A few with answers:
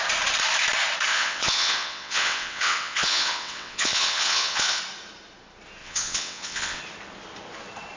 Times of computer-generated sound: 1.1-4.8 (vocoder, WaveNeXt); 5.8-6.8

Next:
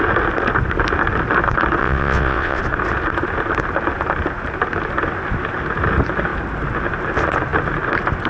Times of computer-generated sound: 1.8-2.6 (vocoder, WaveNeXt)

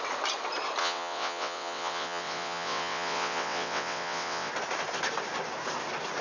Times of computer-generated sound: 0.8-4.5 (vocoder, WaveNeXt)

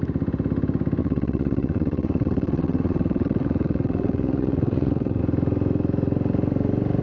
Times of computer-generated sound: 1.0-5.2 (vocoder, WaveNeXt)